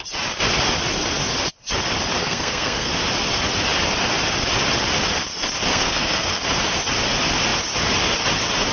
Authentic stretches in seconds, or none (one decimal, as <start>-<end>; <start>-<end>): 0.0-2.2; 2.9-5.7; 6.4-8.7